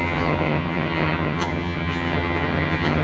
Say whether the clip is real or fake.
fake